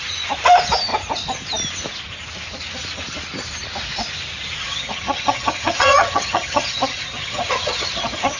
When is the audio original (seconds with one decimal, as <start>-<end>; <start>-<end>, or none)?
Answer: 0.0-4.6